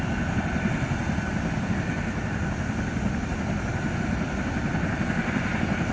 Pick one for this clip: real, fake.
real